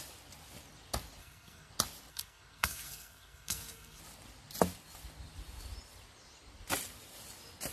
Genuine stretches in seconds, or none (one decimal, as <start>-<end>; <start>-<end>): 0.0-1.2; 1.7-2.1; 4.0-7.7

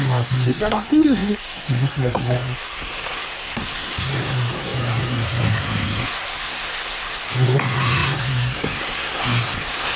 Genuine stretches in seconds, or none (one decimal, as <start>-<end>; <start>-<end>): none

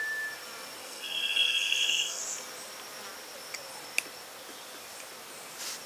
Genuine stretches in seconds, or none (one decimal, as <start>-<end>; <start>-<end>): 0.0-0.8; 2.2-5.9

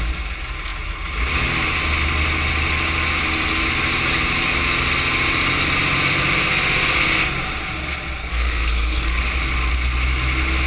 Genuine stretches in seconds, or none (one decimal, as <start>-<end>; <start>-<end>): 0.0-8.2; 9.2-10.7